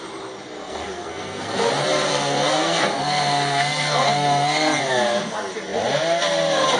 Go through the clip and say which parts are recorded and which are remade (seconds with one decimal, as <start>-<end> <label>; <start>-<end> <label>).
0.0-0.6 recorded; 0.6-1.7 remade; 1.7-2.1 recorded; 2.1-4.8 remade; 4.8-6.8 recorded